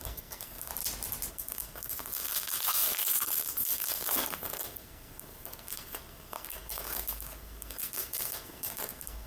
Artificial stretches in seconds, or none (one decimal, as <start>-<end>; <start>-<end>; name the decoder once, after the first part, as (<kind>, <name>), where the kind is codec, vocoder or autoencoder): 0.0-0.7 (codec, SNAC); 1.3-9.3